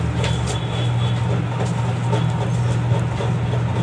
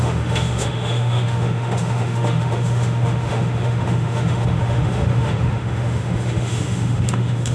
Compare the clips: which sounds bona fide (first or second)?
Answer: first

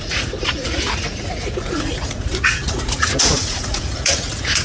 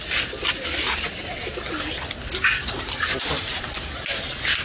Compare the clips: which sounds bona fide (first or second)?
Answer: second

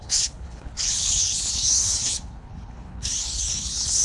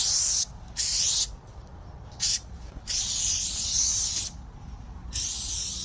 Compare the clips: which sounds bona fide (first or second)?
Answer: second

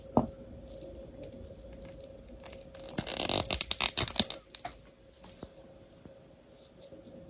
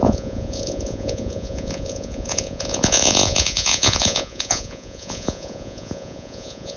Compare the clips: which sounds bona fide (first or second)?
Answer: first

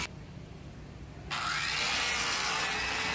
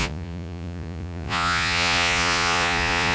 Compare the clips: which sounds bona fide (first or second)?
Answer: first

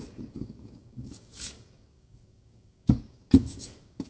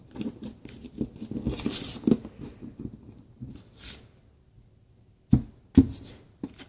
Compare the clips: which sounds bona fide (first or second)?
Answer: second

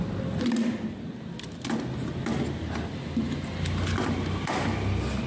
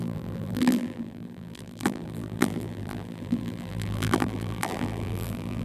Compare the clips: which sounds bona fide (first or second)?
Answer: first